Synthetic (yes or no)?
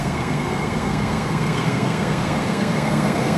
yes